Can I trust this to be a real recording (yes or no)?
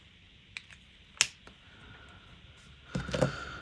yes